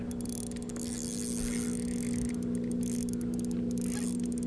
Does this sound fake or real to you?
real